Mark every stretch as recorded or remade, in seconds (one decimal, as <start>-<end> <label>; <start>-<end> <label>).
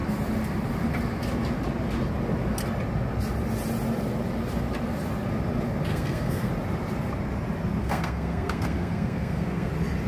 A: 0.0-5.9 recorded; 5.9-6.5 remade; 6.5-7.8 recorded; 7.8-9.7 remade; 9.7-10.1 recorded